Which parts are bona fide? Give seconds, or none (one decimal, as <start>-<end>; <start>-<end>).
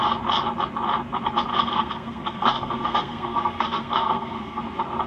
0.0-1.5; 4.6-5.1